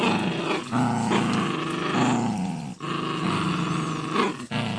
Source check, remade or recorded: recorded